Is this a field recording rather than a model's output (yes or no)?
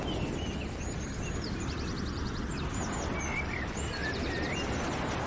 yes